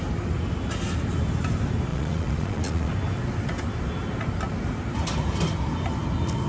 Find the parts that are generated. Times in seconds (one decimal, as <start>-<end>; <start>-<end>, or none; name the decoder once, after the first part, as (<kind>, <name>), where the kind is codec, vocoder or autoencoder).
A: 1.9-2.9 (vocoder, Vocos)